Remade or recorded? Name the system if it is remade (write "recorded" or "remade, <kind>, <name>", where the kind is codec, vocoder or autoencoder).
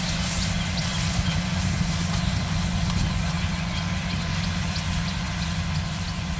remade, vocoder, Vocos